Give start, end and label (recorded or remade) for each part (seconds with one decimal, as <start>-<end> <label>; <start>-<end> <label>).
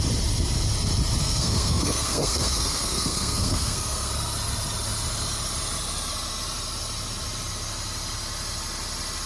0.0-1.2 recorded; 1.2-4.1 remade; 4.1-9.3 recorded